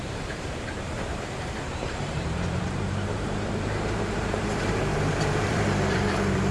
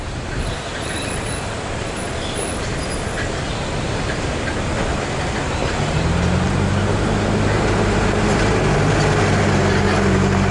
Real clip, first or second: second